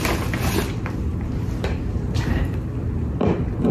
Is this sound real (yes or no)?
no